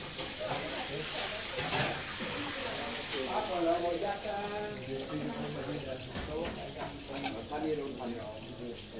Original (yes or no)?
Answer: yes